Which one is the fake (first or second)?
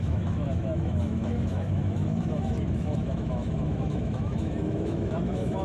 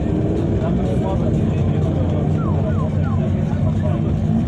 first